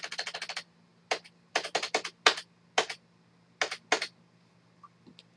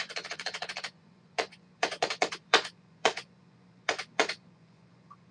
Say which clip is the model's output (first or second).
second